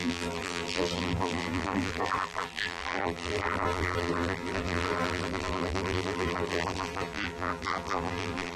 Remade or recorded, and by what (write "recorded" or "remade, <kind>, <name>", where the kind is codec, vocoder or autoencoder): remade, vocoder, BigVGAN v2